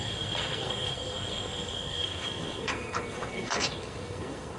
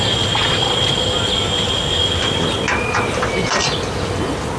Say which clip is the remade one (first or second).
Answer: first